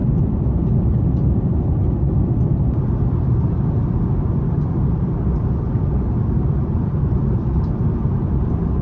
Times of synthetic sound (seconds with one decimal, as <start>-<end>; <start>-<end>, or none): none